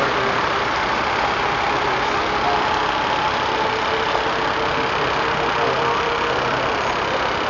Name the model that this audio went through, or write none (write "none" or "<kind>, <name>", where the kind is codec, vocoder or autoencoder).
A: none